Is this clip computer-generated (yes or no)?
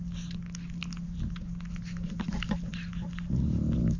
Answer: no